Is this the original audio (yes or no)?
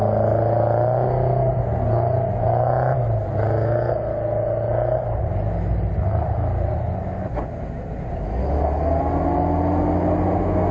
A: yes